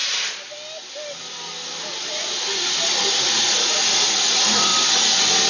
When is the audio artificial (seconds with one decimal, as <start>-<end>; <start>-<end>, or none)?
3.3-4.7

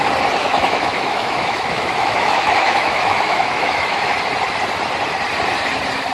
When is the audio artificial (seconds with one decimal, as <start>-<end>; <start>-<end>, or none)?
0.4-4.1